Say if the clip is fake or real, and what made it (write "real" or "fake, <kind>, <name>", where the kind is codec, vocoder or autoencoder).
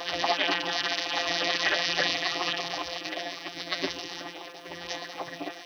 fake, vocoder, BigVGAN v2